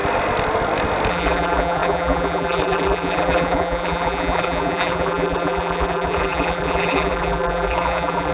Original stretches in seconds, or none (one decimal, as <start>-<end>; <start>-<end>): 0.0-1.1